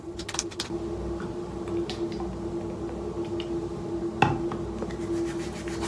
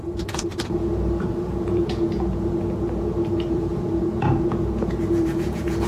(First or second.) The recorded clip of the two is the first